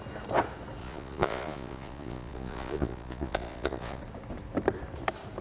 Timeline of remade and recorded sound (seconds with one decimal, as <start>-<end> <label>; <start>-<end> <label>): 0.0-0.8 recorded; 0.8-4.0 remade; 4.0-5.4 recorded